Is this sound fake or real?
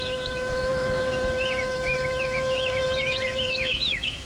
fake